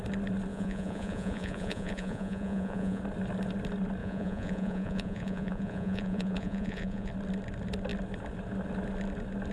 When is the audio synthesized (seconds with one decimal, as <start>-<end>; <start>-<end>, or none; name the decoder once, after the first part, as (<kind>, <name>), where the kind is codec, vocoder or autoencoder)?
0.5-3.0 (vocoder, Vocos); 4.0-7.1